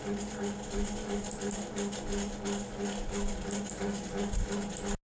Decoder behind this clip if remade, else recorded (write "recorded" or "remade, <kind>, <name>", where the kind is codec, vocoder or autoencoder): recorded